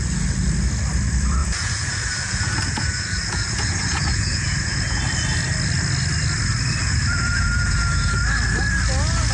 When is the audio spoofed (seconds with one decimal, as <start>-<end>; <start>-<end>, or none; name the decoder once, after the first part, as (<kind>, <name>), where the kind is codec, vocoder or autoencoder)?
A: 1.4-5.0 (vocoder, Vocos); 6.8-8.2